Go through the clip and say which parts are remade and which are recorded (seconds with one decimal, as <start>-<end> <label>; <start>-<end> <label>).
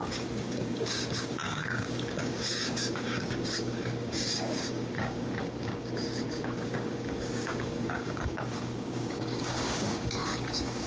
0.0-10.9 remade